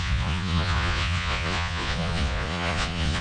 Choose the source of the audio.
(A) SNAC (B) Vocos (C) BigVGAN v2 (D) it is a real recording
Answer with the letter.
B